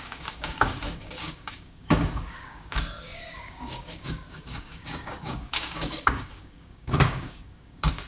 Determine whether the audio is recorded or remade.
remade